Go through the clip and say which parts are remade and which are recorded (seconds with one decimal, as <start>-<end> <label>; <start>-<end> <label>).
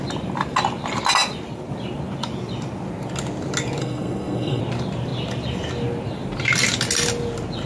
0.0-3.8 recorded; 3.8-4.6 remade; 4.6-7.7 recorded